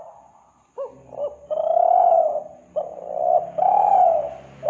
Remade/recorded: recorded